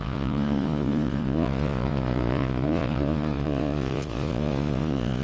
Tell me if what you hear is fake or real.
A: fake